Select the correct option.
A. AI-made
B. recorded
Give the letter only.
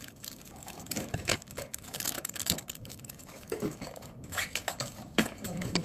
A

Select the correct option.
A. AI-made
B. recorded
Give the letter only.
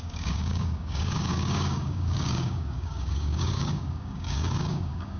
A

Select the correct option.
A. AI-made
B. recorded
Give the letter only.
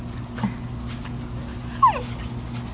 B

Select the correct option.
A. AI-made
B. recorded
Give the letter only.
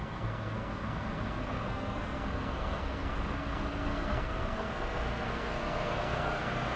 A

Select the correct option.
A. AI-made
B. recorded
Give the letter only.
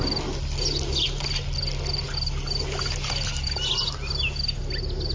B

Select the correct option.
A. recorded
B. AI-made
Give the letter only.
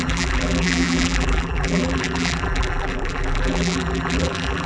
B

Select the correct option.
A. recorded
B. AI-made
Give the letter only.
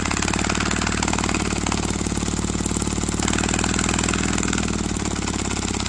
A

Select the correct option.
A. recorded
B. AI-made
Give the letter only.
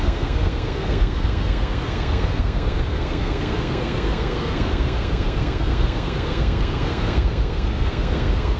B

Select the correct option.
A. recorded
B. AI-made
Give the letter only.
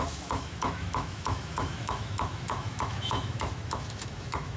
B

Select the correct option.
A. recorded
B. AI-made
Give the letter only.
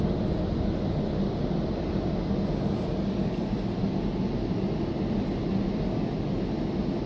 A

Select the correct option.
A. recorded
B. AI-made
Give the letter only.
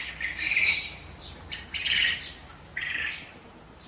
B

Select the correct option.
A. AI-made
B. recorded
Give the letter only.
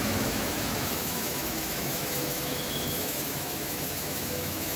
A